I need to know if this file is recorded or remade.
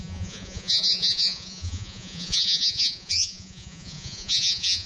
remade